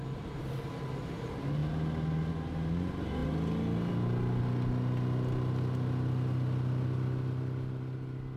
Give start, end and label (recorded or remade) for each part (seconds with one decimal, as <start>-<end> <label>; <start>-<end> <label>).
0.0-8.4 recorded

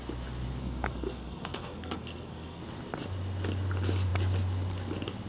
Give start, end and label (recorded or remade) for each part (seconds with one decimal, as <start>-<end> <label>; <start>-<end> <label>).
0.0-0.6 recorded; 0.6-2.6 remade; 2.6-5.3 recorded

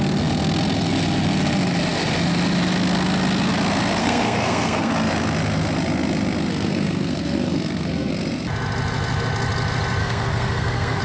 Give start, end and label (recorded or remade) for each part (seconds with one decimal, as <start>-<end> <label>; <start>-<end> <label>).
0.0-4.0 recorded; 4.0-4.9 remade; 4.9-6.5 recorded; 6.5-8.1 remade; 8.1-10.0 recorded; 10.0-11.0 remade

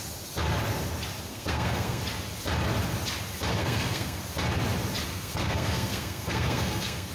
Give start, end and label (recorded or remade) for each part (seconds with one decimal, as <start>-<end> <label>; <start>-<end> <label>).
0.0-1.3 recorded; 1.3-2.0 remade; 2.0-3.5 recorded; 3.5-4.2 remade; 4.2-5.1 recorded; 5.1-7.1 remade

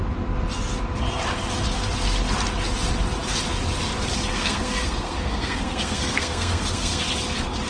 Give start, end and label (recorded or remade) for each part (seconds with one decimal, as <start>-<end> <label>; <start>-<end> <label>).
0.0-4.3 recorded; 4.3-7.0 remade; 7.0-7.7 recorded

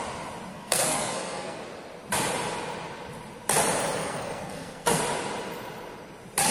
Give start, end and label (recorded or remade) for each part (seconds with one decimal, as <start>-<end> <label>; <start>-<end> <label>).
0.0-0.5 recorded; 0.5-1.6 remade; 1.6-4.0 recorded; 4.0-5.0 remade; 5.0-6.5 recorded

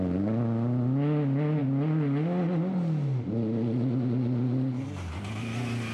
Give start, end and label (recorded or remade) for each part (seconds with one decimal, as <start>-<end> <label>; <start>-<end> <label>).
0.0-5.9 recorded

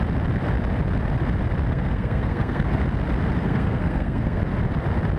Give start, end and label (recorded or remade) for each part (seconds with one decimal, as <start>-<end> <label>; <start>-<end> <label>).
0.0-1.7 recorded; 1.7-2.8 remade; 2.8-3.4 recorded; 3.4-4.4 remade; 4.4-5.2 recorded